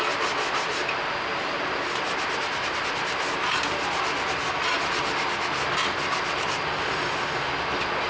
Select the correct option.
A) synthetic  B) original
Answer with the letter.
B